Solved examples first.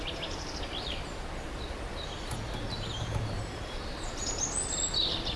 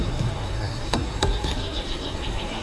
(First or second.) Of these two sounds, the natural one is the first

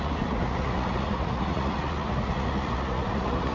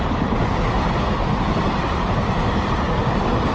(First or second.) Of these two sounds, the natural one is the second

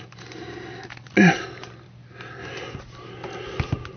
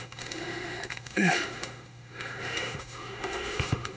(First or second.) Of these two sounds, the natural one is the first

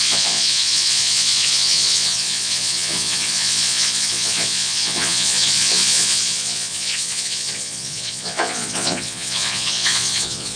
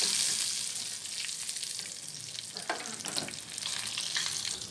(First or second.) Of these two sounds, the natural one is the second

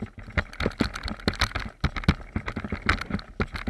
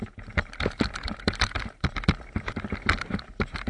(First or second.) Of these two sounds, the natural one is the first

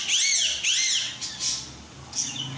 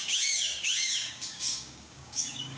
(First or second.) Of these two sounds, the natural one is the first